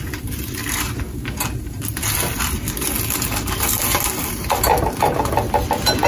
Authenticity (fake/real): real